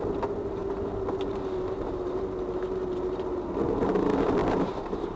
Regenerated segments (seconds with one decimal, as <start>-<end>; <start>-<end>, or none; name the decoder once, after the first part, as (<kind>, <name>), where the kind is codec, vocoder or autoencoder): 4.4-5.2 (vocoder, BigVGAN v2)